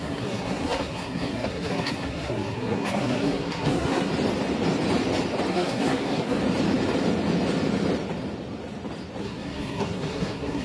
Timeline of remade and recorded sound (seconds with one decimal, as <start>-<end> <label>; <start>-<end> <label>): 0.0-4.1 remade; 4.1-5.5 recorded; 5.5-6.4 remade; 6.4-9.2 recorded; 9.2-10.6 remade